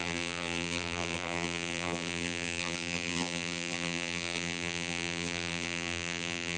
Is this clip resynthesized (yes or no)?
yes